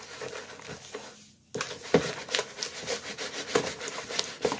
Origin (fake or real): real